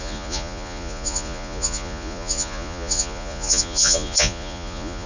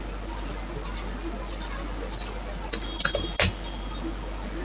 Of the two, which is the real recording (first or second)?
second